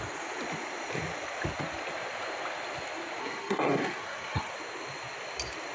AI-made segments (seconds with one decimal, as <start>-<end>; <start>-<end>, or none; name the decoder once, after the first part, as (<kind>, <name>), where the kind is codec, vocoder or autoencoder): 3.2-4.5 (codec, SNAC)